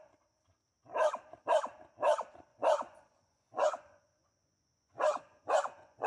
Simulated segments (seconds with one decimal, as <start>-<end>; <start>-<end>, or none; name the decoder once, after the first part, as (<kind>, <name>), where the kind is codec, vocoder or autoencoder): 2.5-6.1 (vocoder, Vocos)